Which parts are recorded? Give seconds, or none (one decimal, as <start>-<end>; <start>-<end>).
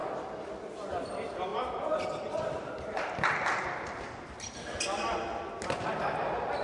0.0-6.6